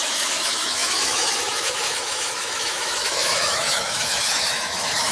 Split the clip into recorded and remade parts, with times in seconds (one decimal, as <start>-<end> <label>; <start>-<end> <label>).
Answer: 0.0-5.1 remade